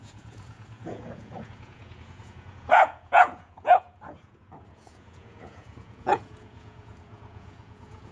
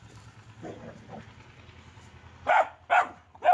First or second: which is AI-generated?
first